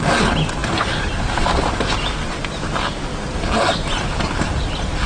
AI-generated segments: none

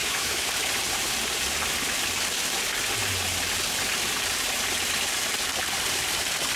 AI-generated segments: 0.0-0.5 (autoencoder, DAC-VAE)

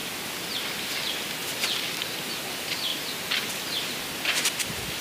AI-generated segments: 2.5-2.9 (vocoder, BigVGAN v2); 4.3-5.0

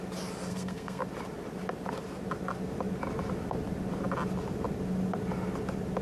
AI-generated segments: 0.5-1.0 (codec, SNAC)

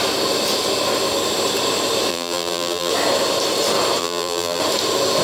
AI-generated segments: 2.1-2.9 (vocoder, BigVGAN v2); 4.0-4.6

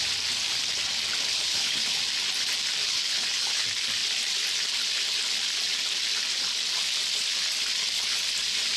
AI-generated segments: 1.3-2.0 (codec, HILCodec); 2.8-3.6